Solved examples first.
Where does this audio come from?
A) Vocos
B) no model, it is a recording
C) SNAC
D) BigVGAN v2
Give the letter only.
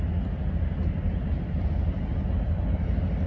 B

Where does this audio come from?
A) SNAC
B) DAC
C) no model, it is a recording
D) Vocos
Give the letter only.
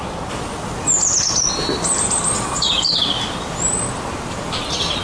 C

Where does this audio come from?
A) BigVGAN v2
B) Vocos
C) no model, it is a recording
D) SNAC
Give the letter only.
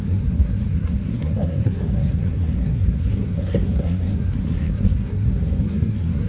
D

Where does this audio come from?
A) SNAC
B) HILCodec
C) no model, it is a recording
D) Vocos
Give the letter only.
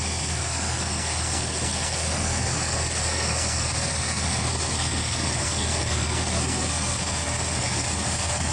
A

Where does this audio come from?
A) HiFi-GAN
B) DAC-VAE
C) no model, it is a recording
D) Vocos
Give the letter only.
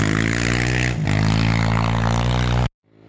C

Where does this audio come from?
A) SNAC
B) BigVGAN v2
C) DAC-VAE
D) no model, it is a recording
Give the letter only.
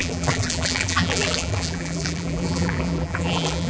B